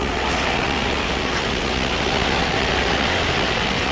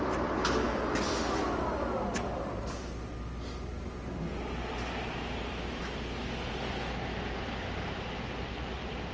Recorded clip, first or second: second